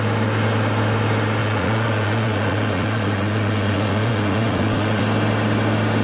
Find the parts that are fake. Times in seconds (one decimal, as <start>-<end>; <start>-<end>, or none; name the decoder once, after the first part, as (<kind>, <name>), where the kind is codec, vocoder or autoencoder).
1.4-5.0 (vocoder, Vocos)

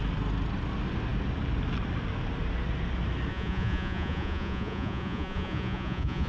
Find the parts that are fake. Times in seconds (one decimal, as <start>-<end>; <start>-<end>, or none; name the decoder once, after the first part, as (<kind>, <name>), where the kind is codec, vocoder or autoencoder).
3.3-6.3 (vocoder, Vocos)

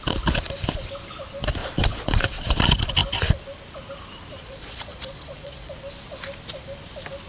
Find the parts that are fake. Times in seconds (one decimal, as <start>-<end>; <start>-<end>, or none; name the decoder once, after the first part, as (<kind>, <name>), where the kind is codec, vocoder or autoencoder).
1.6-2.6 (vocoder, Vocos); 4.4-5.7

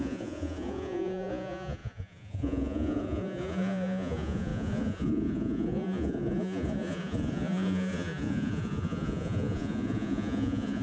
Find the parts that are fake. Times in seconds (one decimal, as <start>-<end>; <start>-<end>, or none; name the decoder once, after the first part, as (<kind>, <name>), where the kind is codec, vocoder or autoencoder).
0.0-10.8 (vocoder, Vocos)